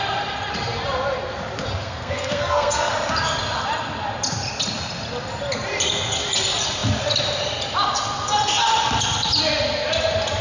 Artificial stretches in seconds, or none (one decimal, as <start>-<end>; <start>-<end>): 1.8-2.9